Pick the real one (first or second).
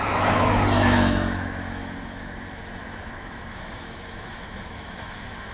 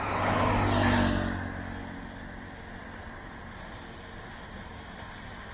second